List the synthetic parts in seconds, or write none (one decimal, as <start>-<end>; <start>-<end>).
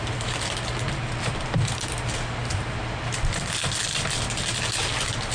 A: none